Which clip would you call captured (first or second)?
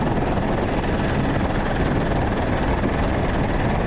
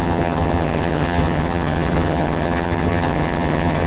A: first